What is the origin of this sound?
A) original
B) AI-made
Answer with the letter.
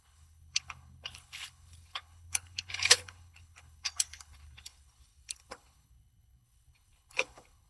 B